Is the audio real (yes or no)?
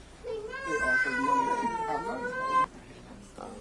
yes